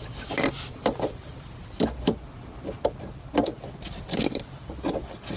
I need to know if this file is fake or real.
real